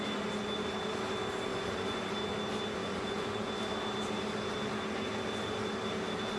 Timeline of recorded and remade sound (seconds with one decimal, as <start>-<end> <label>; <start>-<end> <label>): 0.0-1.5 recorded; 1.5-2.1 remade; 2.1-2.8 recorded; 2.8-3.5 remade; 3.5-6.4 recorded